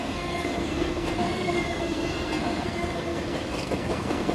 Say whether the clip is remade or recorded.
remade